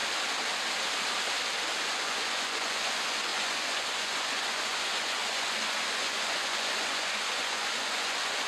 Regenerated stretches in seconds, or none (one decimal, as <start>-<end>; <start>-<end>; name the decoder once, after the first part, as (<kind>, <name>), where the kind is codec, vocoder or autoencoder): 1.8-8.5 (vocoder, Vocos)